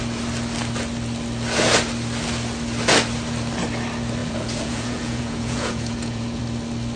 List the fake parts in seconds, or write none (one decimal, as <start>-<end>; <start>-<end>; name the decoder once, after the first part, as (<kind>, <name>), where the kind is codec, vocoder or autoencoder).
4.2-6.4 (vocoder, Vocos)